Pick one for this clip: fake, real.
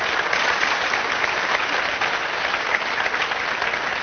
real